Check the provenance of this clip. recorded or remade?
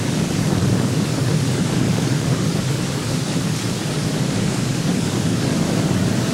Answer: remade